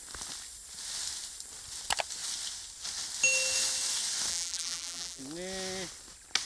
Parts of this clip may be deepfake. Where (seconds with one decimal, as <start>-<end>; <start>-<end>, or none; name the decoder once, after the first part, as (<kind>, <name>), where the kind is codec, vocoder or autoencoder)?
4.3-5.2 (vocoder, BigVGAN v2)